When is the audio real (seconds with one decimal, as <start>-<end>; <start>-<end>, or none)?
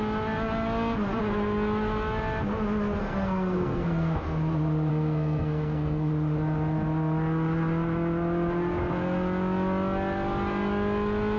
0.0-3.0; 4.2-4.9; 6.1-11.4